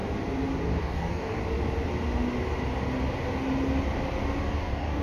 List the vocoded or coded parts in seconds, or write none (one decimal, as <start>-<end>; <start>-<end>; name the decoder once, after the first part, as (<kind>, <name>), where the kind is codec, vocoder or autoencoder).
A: 0.8-1.4 (codec, DAC); 4.4-5.0